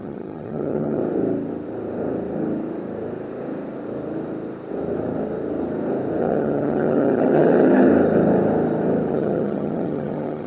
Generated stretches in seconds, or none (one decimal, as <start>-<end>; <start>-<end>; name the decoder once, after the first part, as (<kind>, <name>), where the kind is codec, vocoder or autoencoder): 0.0-1.0 (vocoder, HiFi-GAN); 6.2-7.9; 9.1-10.5